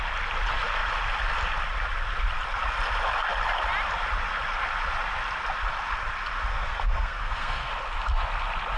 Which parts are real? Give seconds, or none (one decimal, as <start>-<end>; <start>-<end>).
0.0-6.5; 7.7-8.8